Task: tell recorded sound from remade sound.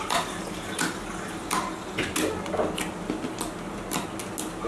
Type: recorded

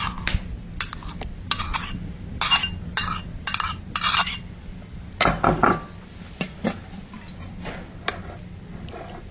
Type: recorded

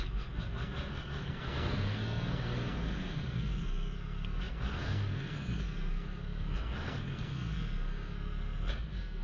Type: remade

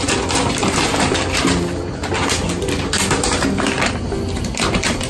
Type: recorded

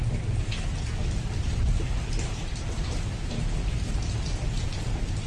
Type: recorded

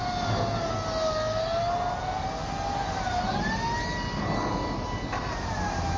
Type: recorded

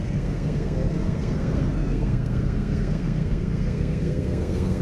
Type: remade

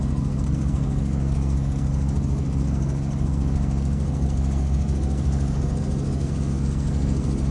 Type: remade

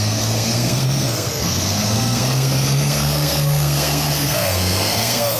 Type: remade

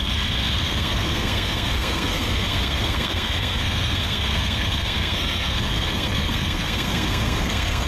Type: remade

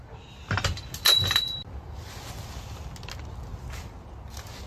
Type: recorded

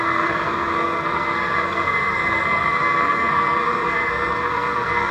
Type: remade